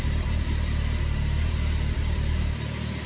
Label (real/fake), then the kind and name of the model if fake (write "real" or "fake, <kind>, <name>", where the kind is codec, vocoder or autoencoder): real